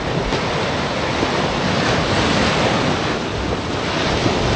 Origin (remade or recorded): recorded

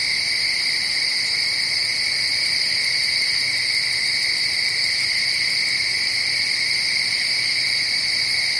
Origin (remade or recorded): remade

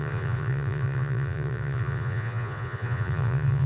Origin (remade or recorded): remade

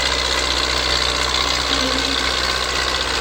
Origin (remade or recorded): recorded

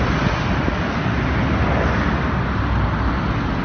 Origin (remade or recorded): recorded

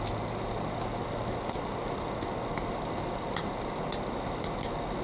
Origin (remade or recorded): recorded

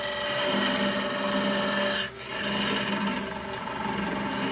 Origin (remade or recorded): recorded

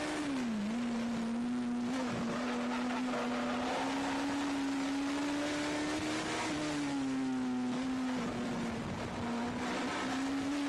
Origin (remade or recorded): recorded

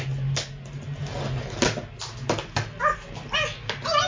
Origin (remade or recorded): recorded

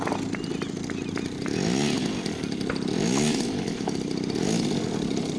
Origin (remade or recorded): recorded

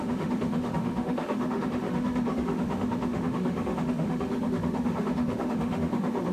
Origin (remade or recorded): remade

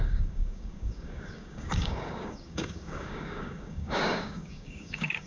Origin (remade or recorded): remade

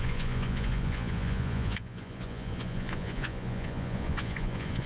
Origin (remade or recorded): remade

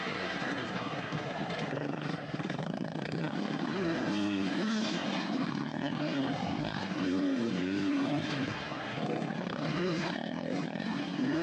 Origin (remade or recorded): remade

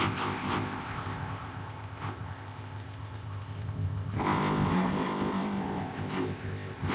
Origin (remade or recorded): remade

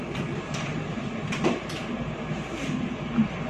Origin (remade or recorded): recorded